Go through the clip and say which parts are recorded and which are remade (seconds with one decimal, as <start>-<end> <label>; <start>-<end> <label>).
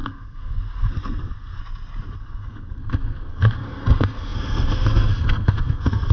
0.0-1.6 remade; 1.6-2.2 recorded; 2.2-6.1 remade